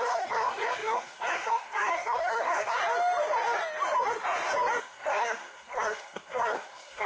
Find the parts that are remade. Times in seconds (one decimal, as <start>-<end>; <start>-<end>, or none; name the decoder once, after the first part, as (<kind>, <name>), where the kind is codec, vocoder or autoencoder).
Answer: 0.0-2.8 (codec, SNAC); 4.8-7.1